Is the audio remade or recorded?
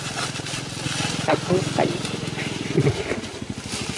recorded